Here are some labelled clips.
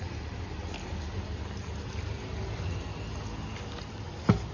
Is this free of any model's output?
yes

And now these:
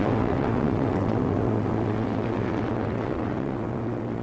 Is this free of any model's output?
no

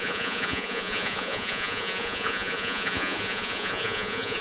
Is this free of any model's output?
no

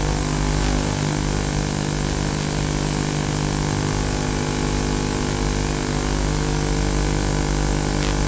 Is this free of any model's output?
yes